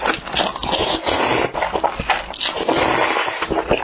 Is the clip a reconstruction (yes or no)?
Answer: no